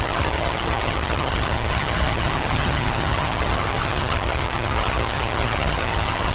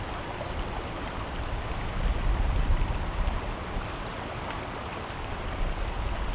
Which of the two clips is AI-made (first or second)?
first